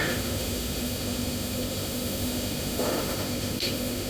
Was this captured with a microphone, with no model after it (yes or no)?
no